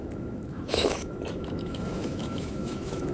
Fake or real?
fake